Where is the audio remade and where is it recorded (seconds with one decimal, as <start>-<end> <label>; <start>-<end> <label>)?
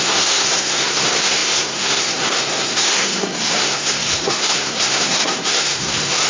0.0-6.3 remade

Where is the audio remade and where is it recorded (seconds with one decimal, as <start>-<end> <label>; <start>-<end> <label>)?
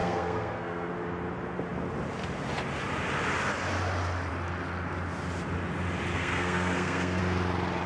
0.0-0.9 remade; 0.9-6.1 recorded; 6.1-7.2 remade; 7.2-7.9 recorded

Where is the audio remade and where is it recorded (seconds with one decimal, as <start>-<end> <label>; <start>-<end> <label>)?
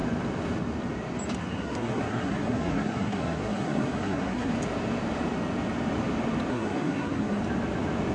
0.0-1.4 recorded; 1.4-4.5 remade; 4.5-6.5 recorded; 6.5-7.4 remade; 7.4-8.1 recorded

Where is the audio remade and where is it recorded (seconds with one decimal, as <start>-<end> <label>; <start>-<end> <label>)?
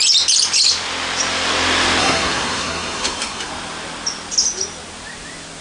0.0-2.0 recorded; 2.0-3.5 remade; 3.5-5.6 recorded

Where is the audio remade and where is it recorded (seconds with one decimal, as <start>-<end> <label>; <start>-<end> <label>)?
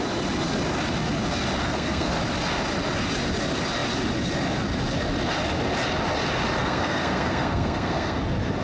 0.0-1.6 recorded; 1.6-2.2 remade; 2.2-6.6 recorded; 6.6-8.2 remade; 8.2-8.6 recorded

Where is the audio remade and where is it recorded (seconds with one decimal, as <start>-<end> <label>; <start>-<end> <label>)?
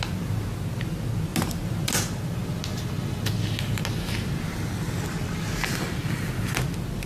0.0-7.1 recorded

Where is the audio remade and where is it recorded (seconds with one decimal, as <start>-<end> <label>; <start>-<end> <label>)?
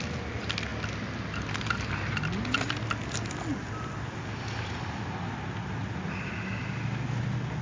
0.0-7.6 recorded